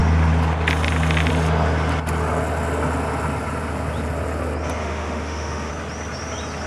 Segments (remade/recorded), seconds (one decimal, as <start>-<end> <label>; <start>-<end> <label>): 0.0-4.8 recorded; 4.8-5.7 remade; 5.7-6.7 recorded